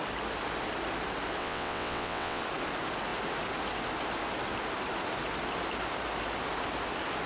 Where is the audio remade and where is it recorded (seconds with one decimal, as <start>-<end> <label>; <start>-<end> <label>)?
0.0-1.4 recorded; 1.4-2.4 remade; 2.4-7.3 recorded